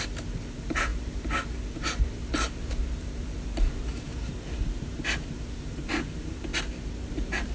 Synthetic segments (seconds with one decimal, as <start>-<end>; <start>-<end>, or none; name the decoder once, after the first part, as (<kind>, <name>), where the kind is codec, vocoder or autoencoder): 0.0-6.5 (vocoder, BigVGAN v2); 7.1-7.5